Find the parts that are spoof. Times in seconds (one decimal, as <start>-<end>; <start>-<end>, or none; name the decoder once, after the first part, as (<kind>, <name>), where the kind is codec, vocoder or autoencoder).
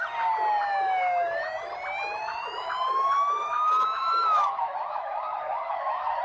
0.6-1.7 (autoencoder, DAC-VAE); 2.2-6.2